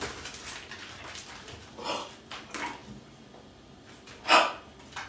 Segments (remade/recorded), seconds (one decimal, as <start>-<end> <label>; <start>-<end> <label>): 0.0-5.1 recorded